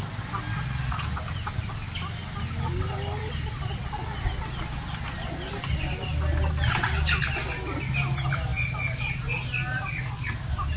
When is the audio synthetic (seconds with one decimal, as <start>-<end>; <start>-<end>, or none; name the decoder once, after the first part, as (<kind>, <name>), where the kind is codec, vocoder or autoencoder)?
none